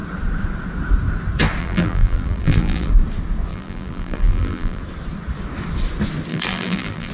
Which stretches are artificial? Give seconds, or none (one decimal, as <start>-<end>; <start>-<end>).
1.6-2.9; 3.5-4.8; 6.3-7.1